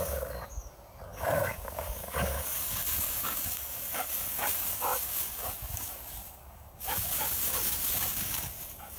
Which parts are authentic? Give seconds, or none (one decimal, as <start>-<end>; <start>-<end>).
none